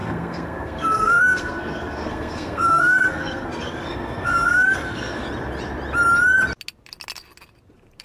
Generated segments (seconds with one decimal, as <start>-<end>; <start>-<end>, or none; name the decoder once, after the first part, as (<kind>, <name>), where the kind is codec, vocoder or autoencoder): 0.0-5.2 (codec, SNAC)

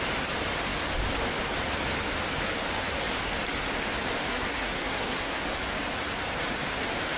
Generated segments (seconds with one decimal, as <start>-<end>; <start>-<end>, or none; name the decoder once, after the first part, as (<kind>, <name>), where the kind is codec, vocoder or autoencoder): 4.3-5.4 (codec, SNAC)